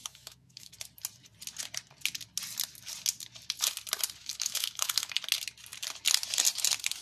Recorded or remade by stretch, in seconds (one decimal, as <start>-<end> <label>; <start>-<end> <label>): 0.0-0.7 remade; 0.7-4.2 recorded; 4.2-5.1 remade; 5.1-7.0 recorded